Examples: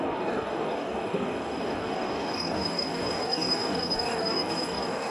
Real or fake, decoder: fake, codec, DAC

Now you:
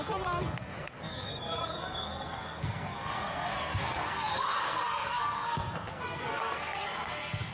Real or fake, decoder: fake, codec, SNAC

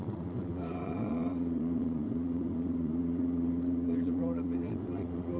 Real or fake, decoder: fake, vocoder, Vocos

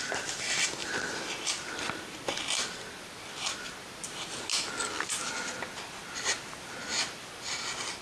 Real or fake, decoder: real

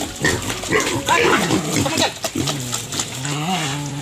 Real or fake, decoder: real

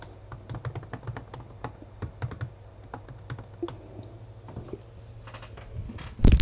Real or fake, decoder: real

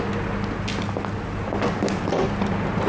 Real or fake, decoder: real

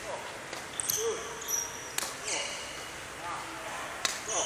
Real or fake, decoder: real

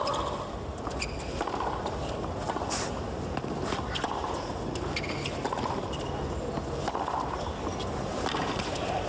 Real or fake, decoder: real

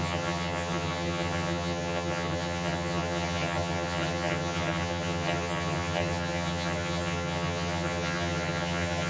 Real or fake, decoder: fake, vocoder, HiFi-GAN